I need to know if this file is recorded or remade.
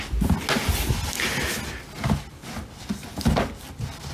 recorded